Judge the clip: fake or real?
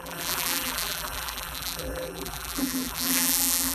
fake